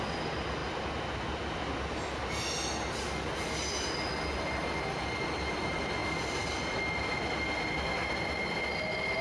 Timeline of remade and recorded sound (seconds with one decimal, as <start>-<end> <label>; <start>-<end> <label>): 0.0-9.2 recorded